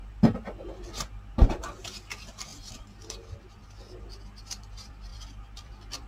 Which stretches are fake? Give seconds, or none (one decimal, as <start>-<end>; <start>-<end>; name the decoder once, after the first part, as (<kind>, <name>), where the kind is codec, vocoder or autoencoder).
0.6-6.1 (vocoder, BigVGAN v2)